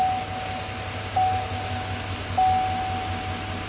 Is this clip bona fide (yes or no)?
yes